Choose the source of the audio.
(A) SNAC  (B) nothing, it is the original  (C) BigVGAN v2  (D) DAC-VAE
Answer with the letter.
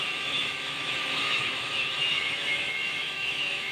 D